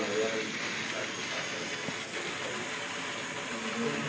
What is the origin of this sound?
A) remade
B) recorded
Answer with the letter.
B